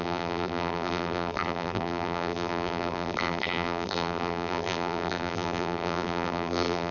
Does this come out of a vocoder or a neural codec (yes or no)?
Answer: yes